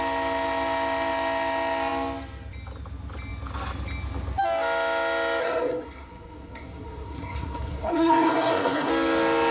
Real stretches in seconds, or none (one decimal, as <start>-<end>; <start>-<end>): 0.0-5.4; 8.9-9.5